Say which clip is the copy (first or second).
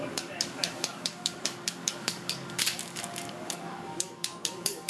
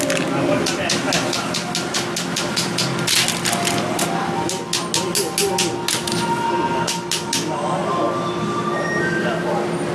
first